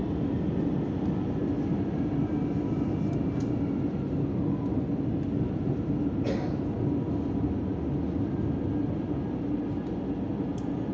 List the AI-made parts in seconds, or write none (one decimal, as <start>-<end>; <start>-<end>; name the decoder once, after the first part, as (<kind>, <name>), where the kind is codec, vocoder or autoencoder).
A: none